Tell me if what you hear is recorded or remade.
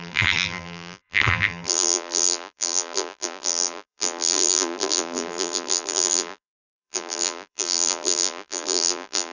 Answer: remade